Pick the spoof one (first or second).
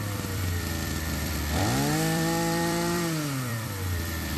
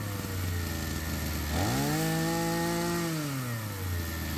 first